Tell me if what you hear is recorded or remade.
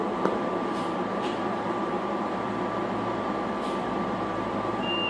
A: remade